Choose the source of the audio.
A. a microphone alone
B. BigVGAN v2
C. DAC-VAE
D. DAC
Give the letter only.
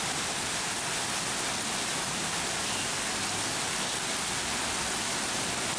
A